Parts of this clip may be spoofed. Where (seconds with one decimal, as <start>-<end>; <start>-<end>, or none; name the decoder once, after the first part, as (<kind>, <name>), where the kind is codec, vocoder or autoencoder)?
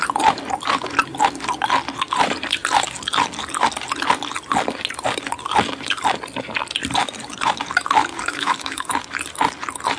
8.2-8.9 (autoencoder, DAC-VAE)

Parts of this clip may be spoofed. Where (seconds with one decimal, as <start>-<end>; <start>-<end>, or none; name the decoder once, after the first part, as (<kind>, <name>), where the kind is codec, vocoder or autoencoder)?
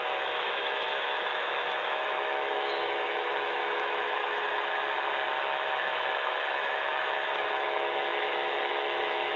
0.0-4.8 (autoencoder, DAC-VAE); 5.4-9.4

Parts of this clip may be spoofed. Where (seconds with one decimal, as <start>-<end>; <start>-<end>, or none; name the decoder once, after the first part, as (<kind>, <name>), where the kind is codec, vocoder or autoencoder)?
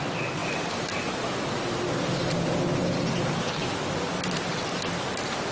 none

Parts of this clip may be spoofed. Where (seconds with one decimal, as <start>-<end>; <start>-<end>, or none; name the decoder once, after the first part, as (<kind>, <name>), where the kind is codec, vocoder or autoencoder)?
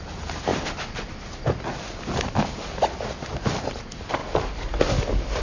none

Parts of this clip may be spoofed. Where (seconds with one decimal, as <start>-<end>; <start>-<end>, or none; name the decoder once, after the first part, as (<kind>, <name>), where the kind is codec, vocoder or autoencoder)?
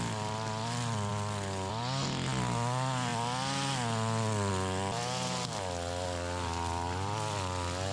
none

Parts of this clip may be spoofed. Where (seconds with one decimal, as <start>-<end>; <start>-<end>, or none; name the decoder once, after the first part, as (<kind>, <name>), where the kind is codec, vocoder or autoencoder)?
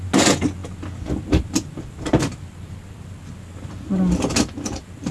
none